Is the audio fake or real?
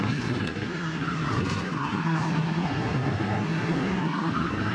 fake